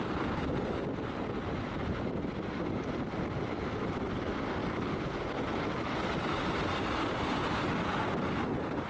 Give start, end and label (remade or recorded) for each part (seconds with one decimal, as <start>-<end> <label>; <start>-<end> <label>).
0.0-8.9 recorded